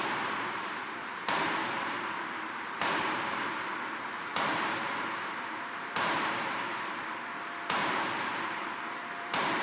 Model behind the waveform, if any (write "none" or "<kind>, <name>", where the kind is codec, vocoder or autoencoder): vocoder, BigVGAN v2